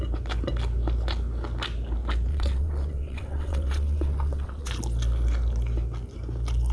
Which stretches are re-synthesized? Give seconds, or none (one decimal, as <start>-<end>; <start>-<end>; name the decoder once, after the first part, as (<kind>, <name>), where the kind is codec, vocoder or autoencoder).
2.3-4.7 (vocoder, WaveNeXt)